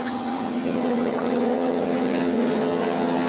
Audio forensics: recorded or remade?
remade